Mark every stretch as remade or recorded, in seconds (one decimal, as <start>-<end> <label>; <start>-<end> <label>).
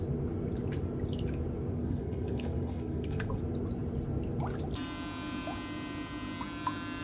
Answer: 0.0-1.8 recorded; 1.8-3.4 remade; 3.4-7.0 recorded